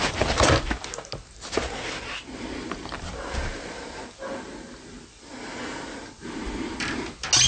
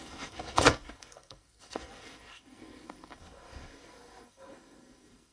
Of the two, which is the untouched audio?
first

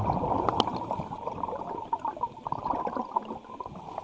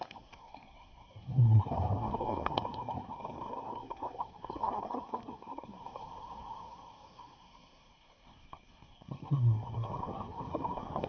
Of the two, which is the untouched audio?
first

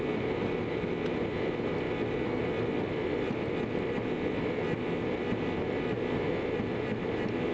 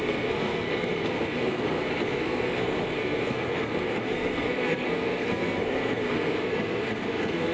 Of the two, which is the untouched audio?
first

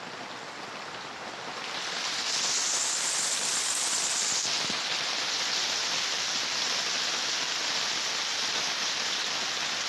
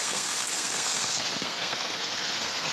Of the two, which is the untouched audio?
first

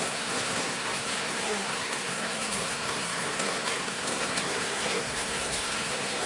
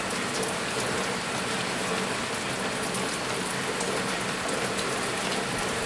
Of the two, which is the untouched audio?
second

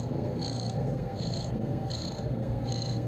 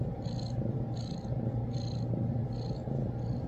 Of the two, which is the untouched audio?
second